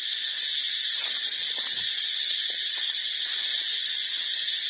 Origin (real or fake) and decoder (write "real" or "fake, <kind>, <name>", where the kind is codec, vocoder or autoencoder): real